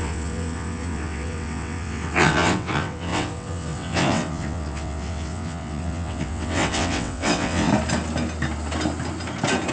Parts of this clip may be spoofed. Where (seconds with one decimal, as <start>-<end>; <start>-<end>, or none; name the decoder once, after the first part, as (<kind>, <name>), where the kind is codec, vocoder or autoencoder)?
0.0-7.7 (vocoder, WaveNeXt)